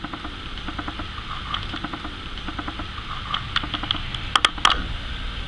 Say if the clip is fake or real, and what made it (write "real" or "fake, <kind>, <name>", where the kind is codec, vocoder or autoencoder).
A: real